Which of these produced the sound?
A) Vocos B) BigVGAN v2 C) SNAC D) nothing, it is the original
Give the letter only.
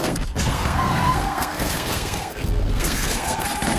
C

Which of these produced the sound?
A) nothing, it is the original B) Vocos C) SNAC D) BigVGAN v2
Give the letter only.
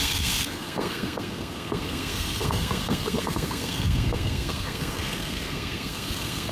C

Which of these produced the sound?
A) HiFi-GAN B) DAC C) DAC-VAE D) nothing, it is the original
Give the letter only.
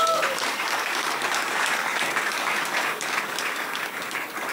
B